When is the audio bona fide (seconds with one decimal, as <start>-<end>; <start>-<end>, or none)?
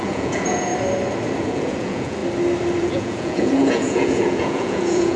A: 0.7-1.4; 2.2-2.8